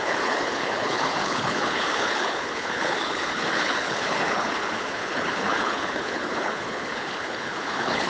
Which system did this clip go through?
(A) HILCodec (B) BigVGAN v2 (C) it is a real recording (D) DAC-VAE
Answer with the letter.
A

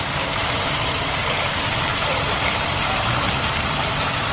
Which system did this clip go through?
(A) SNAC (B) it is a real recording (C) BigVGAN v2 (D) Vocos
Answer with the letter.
C